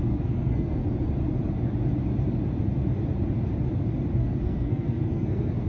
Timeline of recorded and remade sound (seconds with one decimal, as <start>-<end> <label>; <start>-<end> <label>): 0.0-0.8 remade; 0.8-4.2 recorded; 4.2-5.7 remade